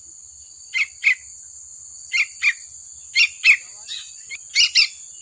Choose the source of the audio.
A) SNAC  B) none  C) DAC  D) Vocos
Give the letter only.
B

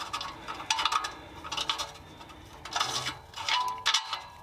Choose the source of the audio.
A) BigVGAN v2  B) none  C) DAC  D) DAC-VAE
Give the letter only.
B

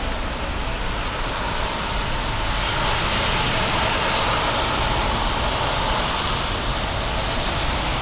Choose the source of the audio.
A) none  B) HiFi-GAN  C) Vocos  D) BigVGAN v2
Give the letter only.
A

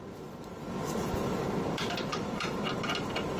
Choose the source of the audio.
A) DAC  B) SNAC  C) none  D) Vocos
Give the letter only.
C